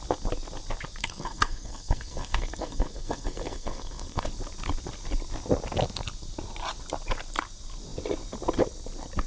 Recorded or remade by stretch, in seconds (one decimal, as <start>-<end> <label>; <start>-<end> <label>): 0.0-1.0 recorded; 1.0-4.3 remade; 4.3-9.3 recorded